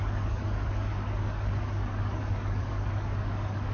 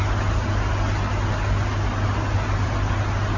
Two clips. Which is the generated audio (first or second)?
first